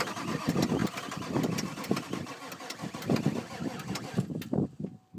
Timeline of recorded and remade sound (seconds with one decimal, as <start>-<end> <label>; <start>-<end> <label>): 0.0-5.2 recorded